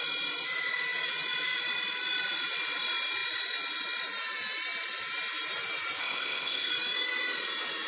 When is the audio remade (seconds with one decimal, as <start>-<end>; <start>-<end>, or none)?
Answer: 6.0-6.7

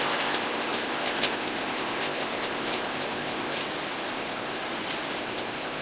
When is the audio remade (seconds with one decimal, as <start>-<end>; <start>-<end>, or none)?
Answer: 0.0-3.6; 4.1-4.6; 5.2-5.8